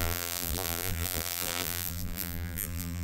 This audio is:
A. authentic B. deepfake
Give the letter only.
B